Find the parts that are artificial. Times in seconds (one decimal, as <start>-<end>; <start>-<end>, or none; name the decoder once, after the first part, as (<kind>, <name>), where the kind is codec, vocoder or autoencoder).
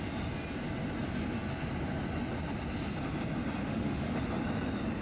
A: 3.6-4.1 (autoencoder, DAC-VAE)